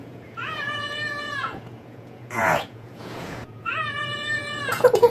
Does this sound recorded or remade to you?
remade